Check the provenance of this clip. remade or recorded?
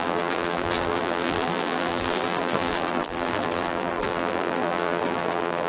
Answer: remade